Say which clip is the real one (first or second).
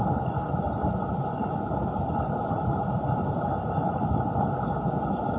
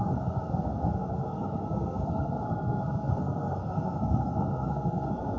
first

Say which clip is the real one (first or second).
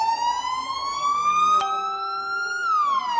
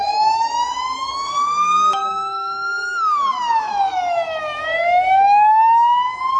first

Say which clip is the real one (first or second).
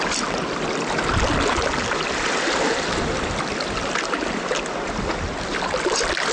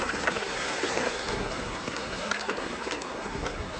first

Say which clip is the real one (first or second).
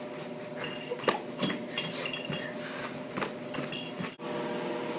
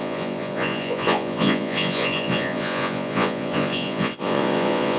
first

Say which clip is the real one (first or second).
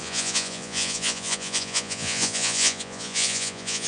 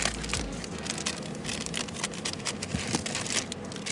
second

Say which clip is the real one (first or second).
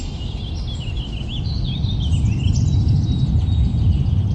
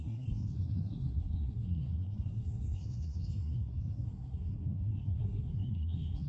first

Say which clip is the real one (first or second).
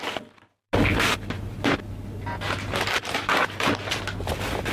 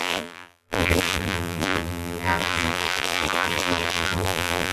first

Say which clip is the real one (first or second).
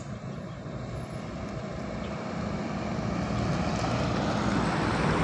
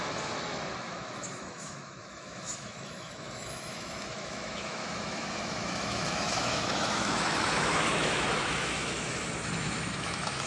first